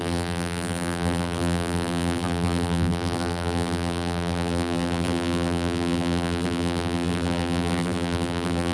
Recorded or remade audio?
remade